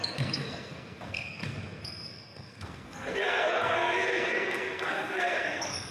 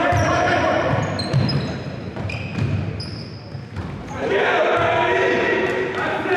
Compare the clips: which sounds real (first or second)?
second